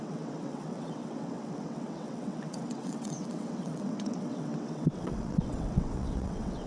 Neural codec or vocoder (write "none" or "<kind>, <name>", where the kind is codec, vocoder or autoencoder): vocoder, WaveNeXt